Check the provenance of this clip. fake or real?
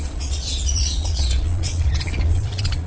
fake